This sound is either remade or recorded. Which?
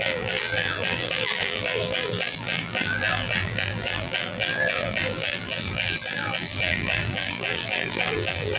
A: remade